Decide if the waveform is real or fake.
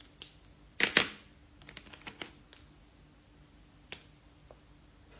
real